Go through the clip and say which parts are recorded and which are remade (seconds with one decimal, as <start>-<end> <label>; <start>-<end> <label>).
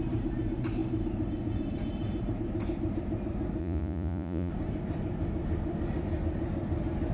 0.0-3.6 recorded; 3.6-4.5 remade; 4.5-7.1 recorded